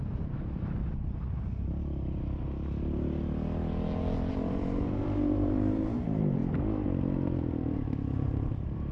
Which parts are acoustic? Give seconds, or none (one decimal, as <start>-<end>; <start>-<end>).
0.8-4.3; 6.4-7.9